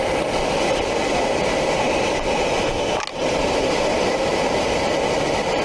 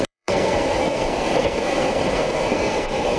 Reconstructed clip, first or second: second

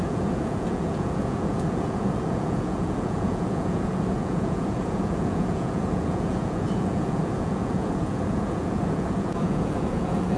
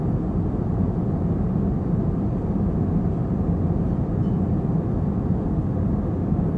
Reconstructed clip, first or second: first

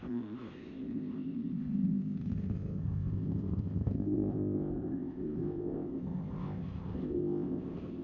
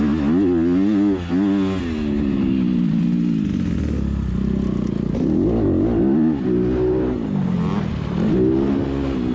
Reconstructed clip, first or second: first